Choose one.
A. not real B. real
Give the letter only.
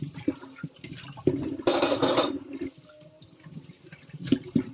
B